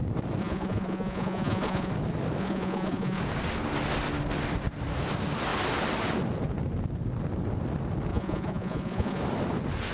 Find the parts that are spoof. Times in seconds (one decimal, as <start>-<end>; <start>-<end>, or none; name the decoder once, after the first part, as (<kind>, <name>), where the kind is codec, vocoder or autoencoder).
0.4-1.9 (vocoder, Vocos); 2.4-3.2; 8.1-9.2